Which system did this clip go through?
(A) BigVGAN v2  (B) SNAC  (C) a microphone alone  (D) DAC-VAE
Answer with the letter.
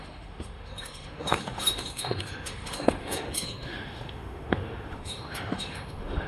D